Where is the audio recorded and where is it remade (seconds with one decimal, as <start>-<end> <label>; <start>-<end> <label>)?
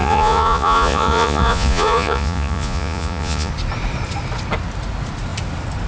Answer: 0.0-3.5 remade; 3.5-5.9 recorded